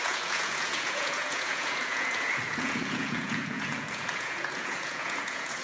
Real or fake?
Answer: fake